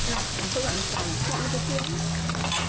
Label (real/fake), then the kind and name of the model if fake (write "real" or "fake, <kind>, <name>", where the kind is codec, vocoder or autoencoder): real